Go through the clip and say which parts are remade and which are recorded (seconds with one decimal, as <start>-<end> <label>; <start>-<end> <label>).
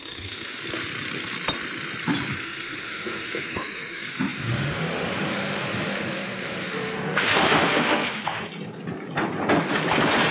0.0-0.6 remade; 0.6-2.3 recorded; 2.3-8.5 remade; 8.5-10.3 recorded